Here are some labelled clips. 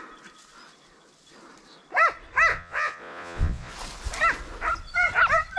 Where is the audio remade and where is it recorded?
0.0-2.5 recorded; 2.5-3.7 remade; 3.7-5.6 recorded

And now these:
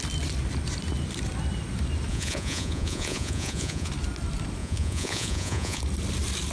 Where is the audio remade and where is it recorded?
0.0-2.1 recorded; 2.1-3.9 remade; 3.9-4.6 recorded; 4.6-5.8 remade; 5.8-6.5 recorded

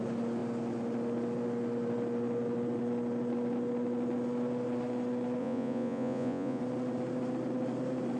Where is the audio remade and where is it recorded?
0.0-5.4 recorded; 5.4-6.6 remade; 6.6-8.2 recorded

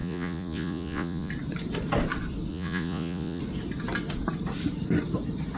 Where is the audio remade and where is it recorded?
0.0-1.3 remade; 1.3-2.5 recorded; 2.5-3.4 remade; 3.4-5.6 recorded

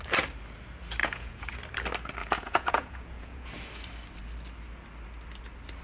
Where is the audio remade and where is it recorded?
0.0-1.0 recorded; 1.0-1.5 remade; 1.5-2.2 recorded; 2.2-3.5 remade; 3.5-5.8 recorded

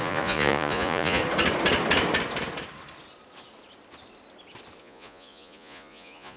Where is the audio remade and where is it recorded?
0.0-1.2 remade; 1.2-4.8 recorded; 4.8-6.4 remade

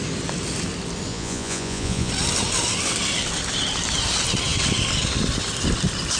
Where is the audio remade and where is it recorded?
0.0-1.1 recorded; 1.1-2.1 remade; 2.1-6.2 recorded